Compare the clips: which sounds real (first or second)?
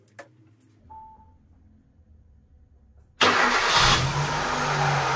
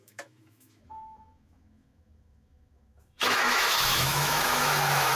first